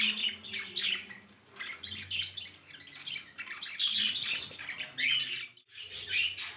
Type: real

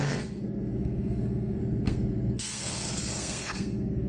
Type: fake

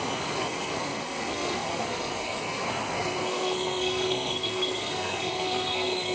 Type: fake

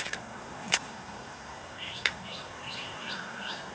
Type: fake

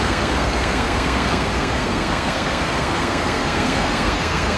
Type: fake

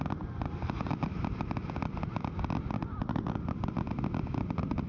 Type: real